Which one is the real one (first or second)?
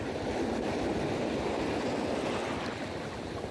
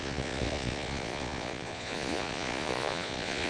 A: first